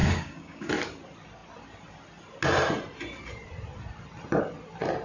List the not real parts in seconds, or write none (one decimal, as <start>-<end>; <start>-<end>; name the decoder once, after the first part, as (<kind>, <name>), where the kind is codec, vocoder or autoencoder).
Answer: 0.0-0.7 (codec, DAC)